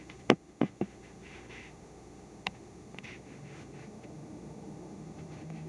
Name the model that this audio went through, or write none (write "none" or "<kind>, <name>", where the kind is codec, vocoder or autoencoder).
autoencoder, DAC-VAE